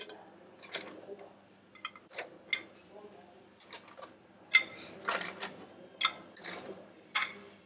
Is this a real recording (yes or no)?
yes